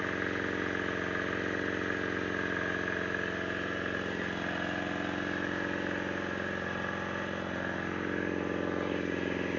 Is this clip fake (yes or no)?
no